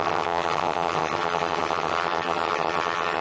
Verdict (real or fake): fake